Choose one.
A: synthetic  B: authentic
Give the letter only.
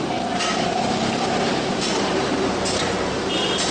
A